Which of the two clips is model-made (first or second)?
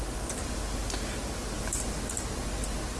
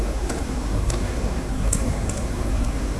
second